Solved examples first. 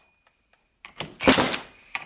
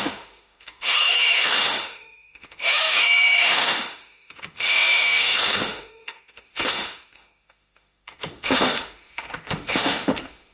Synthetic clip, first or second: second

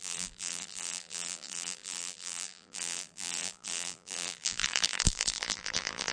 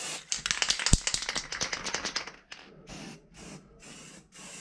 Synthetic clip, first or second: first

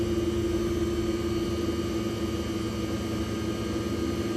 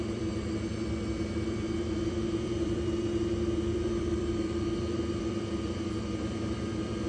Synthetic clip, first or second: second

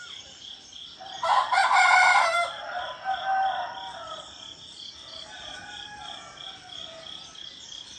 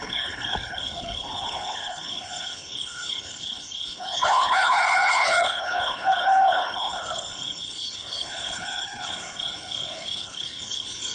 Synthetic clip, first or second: second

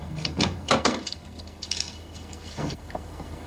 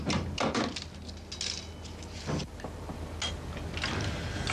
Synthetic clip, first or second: first